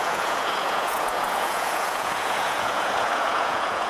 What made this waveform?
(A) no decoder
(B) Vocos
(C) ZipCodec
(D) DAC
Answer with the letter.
B